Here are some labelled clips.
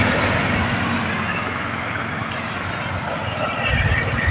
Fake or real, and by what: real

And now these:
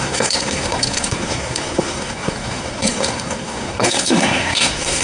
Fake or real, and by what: fake, codec, SNAC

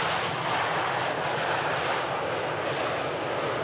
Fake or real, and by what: real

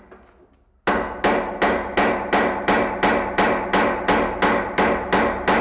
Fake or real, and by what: real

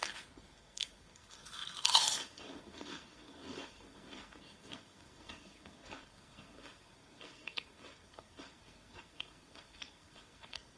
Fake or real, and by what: fake, codec, SNAC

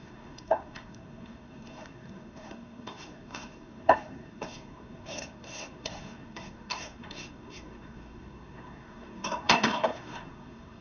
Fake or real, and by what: fake, codec, SNAC